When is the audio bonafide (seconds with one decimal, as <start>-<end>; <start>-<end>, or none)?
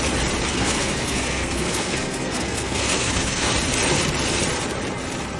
0.0-0.5; 3.5-5.4